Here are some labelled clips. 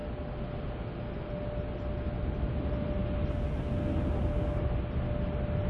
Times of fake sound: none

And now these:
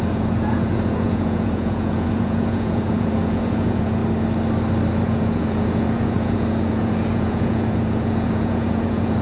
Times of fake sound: 0.0-4.0 (vocoder, Vocos); 4.9-9.2

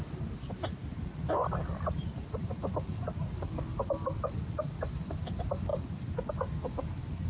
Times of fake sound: none

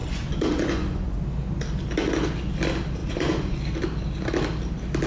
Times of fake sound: 0.0-1.2 (vocoder, Vocos); 3.0-3.6

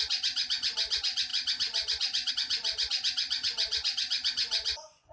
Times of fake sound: 0.0-5.1 (vocoder, Vocos)

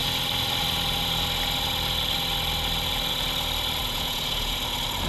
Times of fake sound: 3.8-4.6 (vocoder, Vocos)

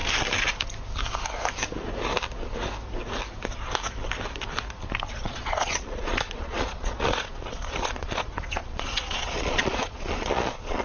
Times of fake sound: 5.1-10.8 (vocoder, Vocos)

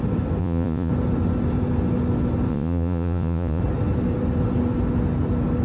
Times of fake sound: 0.4-0.9 (vocoder, Vocos); 2.5-3.6